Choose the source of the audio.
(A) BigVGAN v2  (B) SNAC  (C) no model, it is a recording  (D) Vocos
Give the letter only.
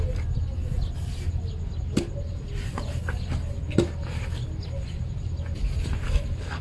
C